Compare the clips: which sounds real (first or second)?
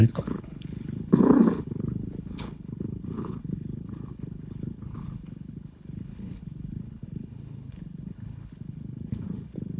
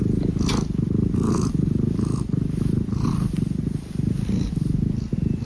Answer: second